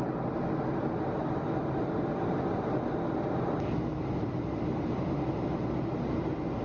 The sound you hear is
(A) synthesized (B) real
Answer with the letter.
B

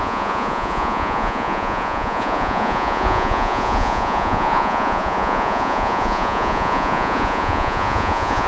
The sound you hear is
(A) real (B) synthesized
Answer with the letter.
B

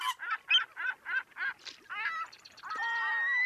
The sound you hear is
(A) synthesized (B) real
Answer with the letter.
B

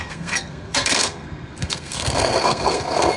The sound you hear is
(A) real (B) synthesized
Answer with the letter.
B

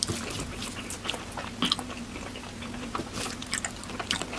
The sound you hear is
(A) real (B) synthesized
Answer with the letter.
A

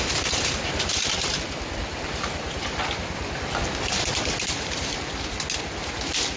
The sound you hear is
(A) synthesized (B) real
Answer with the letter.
B